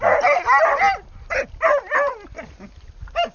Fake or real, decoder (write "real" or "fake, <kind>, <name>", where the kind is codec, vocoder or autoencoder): real